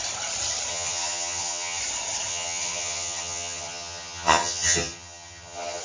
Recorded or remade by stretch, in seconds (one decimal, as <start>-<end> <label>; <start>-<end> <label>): 0.0-0.7 recorded; 0.7-1.8 remade; 1.8-2.3 recorded; 2.3-5.8 remade